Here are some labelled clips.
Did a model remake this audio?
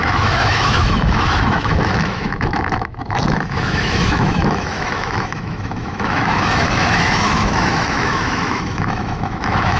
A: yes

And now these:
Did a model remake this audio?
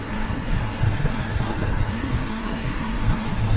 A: yes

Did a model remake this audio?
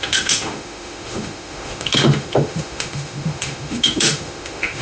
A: yes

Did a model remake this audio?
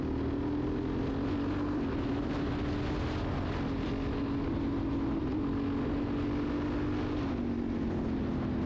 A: no